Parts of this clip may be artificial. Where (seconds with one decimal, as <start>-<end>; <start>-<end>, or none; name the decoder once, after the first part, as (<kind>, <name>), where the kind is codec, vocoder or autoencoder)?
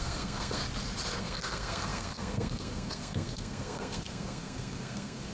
0.0-0.6 (codec, SNAC); 1.2-5.3